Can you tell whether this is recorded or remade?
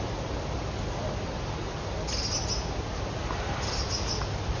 recorded